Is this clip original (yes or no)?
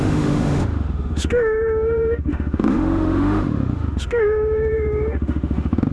no